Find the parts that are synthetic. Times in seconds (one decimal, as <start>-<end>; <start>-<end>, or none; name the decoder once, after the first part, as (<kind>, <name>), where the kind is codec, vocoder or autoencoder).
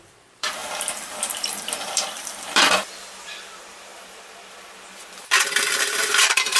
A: 0.0-3.9 (vocoder, BigVGAN v2); 5.8-6.6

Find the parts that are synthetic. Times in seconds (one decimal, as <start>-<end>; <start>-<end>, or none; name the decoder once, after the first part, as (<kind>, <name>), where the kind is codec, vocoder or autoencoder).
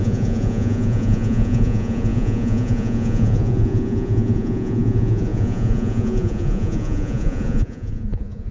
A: 0.0-8.5 (vocoder, Vocos)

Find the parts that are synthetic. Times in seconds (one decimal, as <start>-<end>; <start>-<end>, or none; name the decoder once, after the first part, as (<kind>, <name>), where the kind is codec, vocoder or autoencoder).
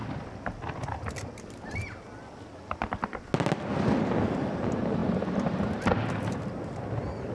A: none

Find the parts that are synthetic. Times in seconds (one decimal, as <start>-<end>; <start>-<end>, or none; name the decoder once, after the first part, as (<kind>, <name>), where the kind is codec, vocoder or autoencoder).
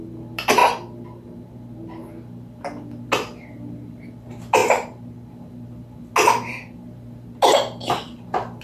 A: none